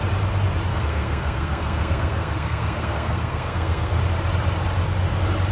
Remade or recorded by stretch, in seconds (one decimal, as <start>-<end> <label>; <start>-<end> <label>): 0.0-0.7 recorded; 0.7-4.0 remade; 4.0-5.5 recorded

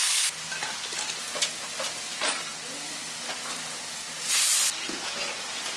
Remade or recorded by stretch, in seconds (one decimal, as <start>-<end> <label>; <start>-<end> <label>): 0.0-5.8 recorded

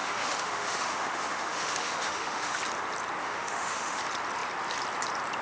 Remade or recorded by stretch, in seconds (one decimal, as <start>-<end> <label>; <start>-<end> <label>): 0.0-2.6 remade; 2.6-3.2 recorded; 3.2-4.0 remade; 4.0-5.4 recorded

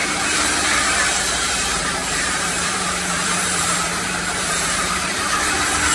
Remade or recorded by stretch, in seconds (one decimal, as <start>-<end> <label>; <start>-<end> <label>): 0.0-1.2 remade; 1.2-2.0 recorded; 2.0-5.5 remade; 5.5-5.9 recorded

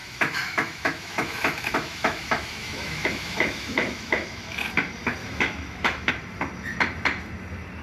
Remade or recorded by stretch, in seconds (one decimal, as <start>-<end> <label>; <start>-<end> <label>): 0.0-4.7 remade; 4.7-5.2 recorded; 5.2-6.1 remade; 6.1-7.8 recorded

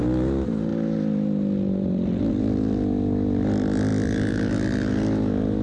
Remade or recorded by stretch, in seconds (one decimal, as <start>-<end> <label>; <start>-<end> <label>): 0.0-5.6 recorded

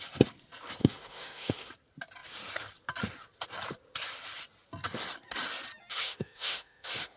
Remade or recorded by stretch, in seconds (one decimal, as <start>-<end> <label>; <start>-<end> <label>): 0.0-0.8 recorded; 0.8-1.7 remade; 1.7-5.9 recorded; 5.9-7.2 remade